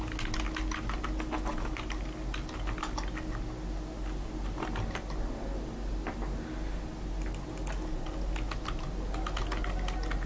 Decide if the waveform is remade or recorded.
recorded